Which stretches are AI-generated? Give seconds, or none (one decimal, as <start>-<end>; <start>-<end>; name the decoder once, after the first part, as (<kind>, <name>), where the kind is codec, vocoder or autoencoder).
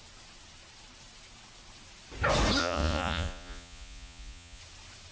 2.6-4.6 (vocoder, Vocos)